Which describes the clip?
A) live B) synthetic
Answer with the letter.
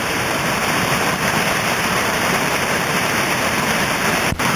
B